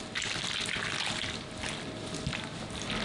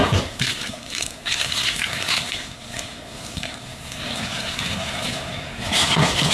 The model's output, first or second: second